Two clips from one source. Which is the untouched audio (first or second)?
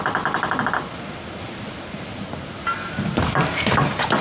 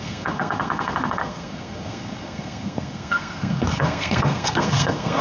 first